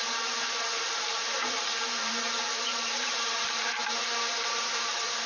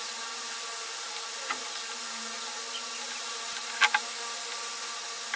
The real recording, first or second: second